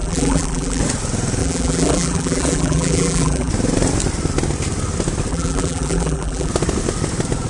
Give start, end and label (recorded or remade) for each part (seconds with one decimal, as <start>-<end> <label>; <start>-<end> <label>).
0.0-0.8 remade; 0.8-1.4 recorded; 1.4-3.5 remade; 3.5-5.3 recorded; 5.3-6.5 remade; 6.5-7.5 recorded